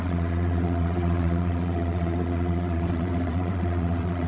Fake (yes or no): yes